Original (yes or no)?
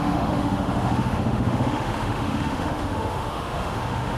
no